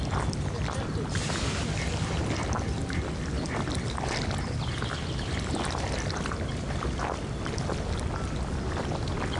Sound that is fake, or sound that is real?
real